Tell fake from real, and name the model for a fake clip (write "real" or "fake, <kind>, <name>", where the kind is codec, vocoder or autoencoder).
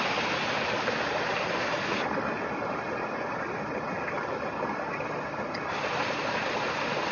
real